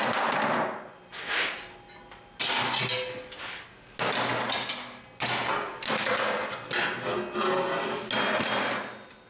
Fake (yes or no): no